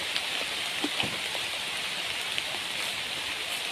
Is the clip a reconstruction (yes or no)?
no